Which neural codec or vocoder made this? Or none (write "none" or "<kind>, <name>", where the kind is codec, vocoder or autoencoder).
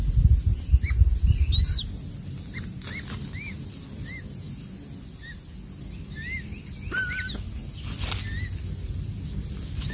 none